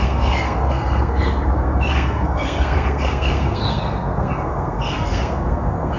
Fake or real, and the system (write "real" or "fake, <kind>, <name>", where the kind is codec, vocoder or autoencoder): fake, codec, SNAC